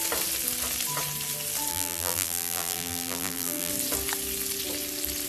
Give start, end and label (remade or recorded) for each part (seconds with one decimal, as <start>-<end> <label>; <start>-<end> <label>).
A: 0.0-1.7 recorded; 1.7-3.7 remade; 3.7-5.3 recorded